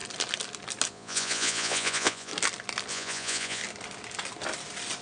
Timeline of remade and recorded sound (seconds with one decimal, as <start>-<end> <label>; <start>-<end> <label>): 0.0-0.9 recorded; 0.9-2.3 remade; 2.3-2.9 recorded; 2.9-3.6 remade; 3.6-5.0 recorded

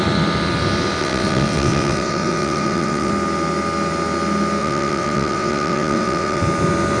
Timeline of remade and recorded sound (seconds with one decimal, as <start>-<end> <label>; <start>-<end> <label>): 0.0-1.0 recorded; 1.0-3.1 remade; 3.1-4.6 recorded; 4.6-6.4 remade; 6.4-7.0 recorded

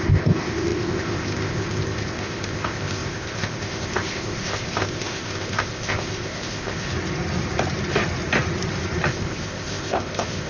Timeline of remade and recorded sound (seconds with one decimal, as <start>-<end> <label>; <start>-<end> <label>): 0.0-6.9 remade; 6.9-9.1 recorded; 9.1-10.5 remade

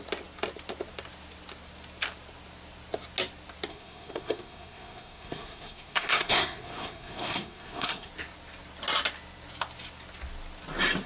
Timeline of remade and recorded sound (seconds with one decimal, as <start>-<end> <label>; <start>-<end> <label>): 0.0-3.7 recorded; 3.7-8.1 remade; 8.1-11.1 recorded

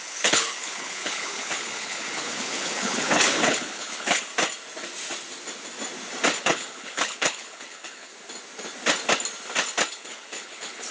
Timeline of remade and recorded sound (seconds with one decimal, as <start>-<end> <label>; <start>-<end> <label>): 0.0-4.3 remade; 4.3-6.4 recorded; 6.4-8.1 remade; 8.1-9.9 recorded; 9.9-10.9 remade

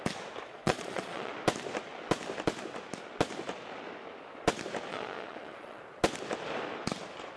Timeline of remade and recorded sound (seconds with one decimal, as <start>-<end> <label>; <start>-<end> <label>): 0.0-0.5 recorded; 0.5-1.3 remade; 1.3-4.9 recorded; 4.9-5.8 remade; 5.8-7.4 recorded

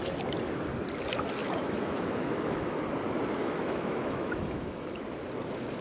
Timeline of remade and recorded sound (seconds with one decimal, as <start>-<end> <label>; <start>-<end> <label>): 0.0-1.4 recorded; 1.4-2.8 remade; 2.8-3.4 recorded; 3.4-5.0 remade; 5.0-5.8 recorded